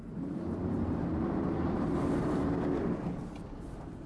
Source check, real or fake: fake